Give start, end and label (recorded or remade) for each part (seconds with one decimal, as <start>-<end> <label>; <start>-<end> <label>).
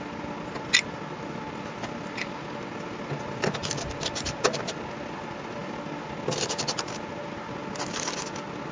0.0-8.7 recorded